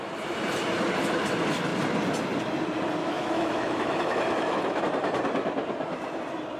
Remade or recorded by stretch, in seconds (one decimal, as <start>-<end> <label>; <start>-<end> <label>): 0.0-3.0 recorded; 3.0-4.8 remade; 4.8-6.6 recorded